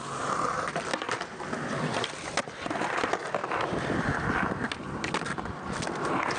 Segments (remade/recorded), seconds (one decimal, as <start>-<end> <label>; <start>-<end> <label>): 0.0-6.4 recorded